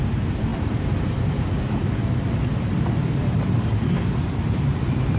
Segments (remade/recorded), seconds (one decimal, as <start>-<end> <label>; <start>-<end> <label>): 0.0-5.2 remade